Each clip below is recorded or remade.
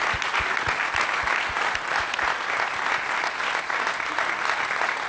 recorded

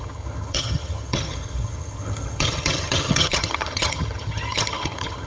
remade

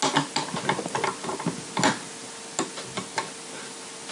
recorded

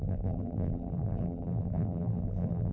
remade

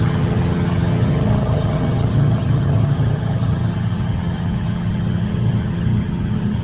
remade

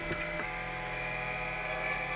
recorded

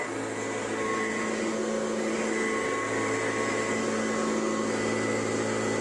recorded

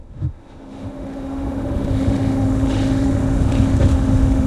remade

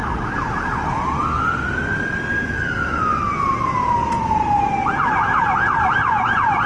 recorded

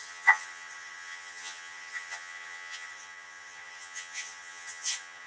remade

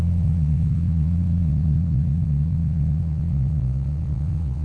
remade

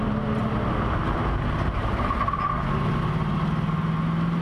recorded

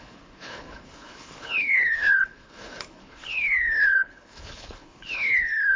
remade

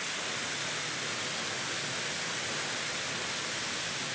recorded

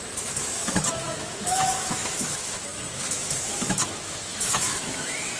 remade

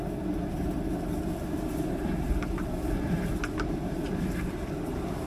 recorded